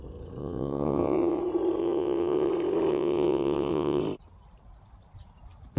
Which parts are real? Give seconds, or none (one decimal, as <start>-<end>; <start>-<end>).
0.0-0.4; 1.4-1.8; 2.5-2.9; 4.0-5.8